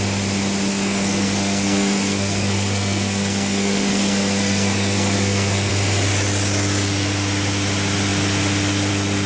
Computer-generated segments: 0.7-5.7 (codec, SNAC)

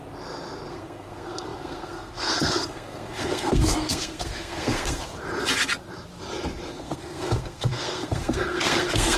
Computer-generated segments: 0.7-5.1 (codec, SNAC); 6.8-9.2

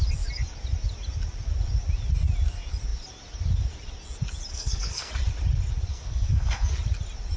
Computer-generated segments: 4.5-5.1 (codec, SNAC); 5.9-6.7

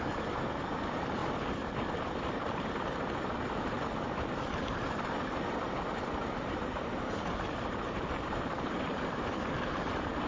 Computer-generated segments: 0.0-1.2 (vocoder, BigVGAN v2); 6.0-10.3

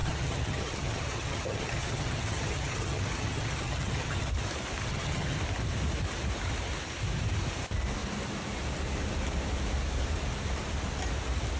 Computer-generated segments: 0.0-4.3 (vocoder, HiFi-GAN); 4.8-5.4